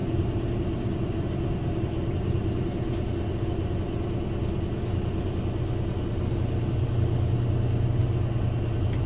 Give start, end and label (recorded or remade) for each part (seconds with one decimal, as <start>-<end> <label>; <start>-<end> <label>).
0.0-9.1 recorded